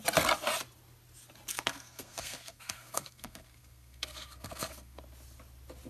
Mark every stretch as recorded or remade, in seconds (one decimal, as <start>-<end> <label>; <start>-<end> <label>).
0.0-1.5 recorded; 1.5-5.0 remade; 5.0-5.9 recorded